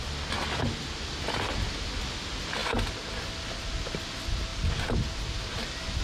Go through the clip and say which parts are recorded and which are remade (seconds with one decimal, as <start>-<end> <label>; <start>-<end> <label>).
0.0-6.0 recorded